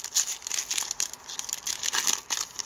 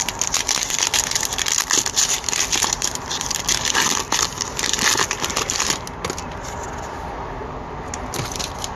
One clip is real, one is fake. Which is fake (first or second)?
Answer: second